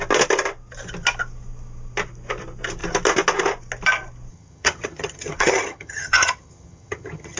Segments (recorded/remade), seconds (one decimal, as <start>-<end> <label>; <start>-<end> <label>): 0.0-4.3 recorded; 4.3-7.4 remade